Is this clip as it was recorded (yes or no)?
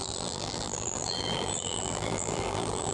no